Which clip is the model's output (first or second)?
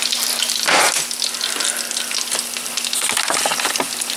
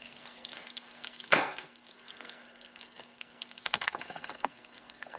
second